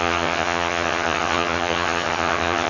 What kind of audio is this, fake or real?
fake